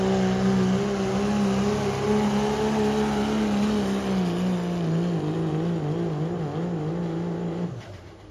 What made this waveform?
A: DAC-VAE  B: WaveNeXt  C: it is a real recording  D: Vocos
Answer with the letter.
C